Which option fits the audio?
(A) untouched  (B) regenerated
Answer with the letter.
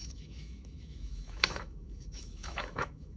B